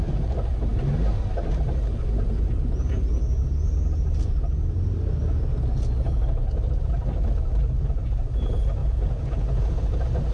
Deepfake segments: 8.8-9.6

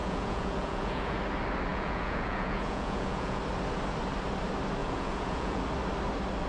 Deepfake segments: 0.0-1.2; 1.7-3.4; 4.8-5.6